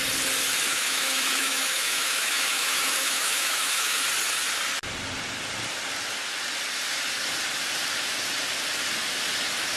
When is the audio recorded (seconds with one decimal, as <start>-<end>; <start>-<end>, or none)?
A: 0.0-0.7; 4.0-9.8